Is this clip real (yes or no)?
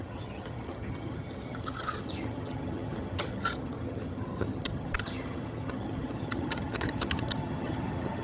no